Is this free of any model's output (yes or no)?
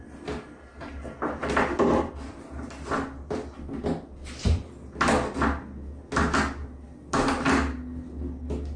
yes